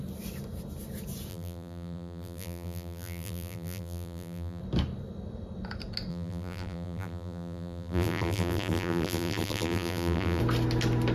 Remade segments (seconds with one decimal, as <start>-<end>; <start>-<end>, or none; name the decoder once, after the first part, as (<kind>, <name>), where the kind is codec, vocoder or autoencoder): 1.3-4.6 (vocoder, BigVGAN v2); 6.1-10.4